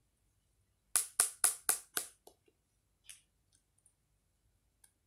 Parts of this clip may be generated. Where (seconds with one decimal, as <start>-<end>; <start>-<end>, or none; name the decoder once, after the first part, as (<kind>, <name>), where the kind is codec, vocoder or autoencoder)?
none